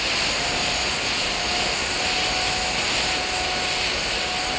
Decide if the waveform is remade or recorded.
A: recorded